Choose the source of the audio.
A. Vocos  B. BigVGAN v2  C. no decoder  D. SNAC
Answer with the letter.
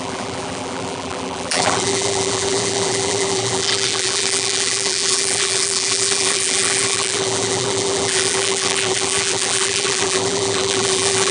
B